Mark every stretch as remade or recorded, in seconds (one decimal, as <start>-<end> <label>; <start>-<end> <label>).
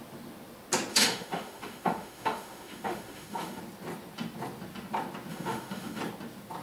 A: 0.0-0.9 recorded; 0.9-3.6 remade; 3.6-5.3 recorded; 5.3-6.0 remade; 6.0-6.6 recorded